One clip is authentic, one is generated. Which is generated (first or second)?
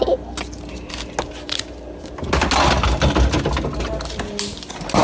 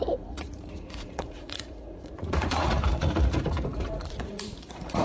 second